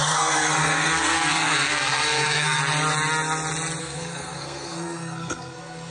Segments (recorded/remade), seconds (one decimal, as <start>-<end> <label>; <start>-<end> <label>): 0.0-2.6 remade; 2.6-3.8 recorded; 3.8-5.9 remade